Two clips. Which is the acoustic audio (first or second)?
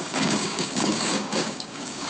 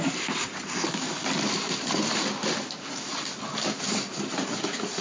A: second